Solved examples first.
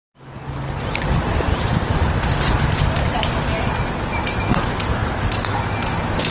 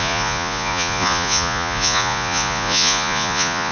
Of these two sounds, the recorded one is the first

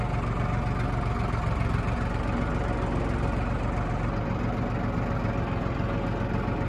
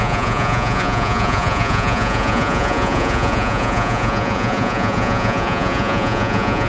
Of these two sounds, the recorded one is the first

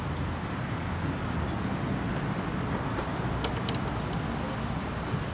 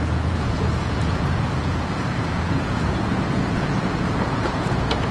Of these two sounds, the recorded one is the first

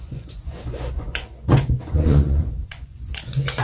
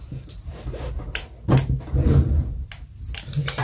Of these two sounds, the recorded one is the second